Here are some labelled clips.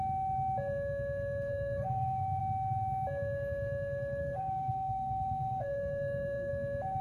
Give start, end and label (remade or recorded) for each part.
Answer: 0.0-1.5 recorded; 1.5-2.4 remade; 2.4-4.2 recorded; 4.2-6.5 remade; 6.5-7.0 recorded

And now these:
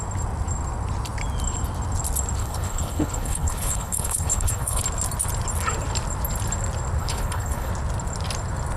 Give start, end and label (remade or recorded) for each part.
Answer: 0.0-2.4 recorded; 2.4-4.8 remade; 4.8-7.0 recorded; 7.0-7.7 remade; 7.7-8.8 recorded

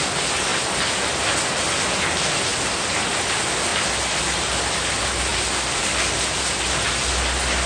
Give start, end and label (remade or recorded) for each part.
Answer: 0.0-7.7 recorded